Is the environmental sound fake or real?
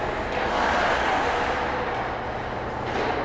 real